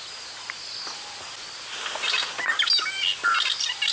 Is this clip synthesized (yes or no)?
no